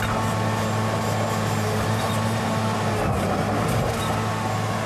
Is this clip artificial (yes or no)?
no